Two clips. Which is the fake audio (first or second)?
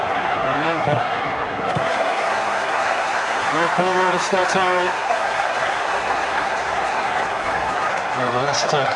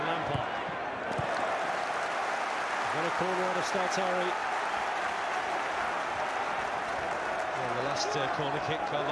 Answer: first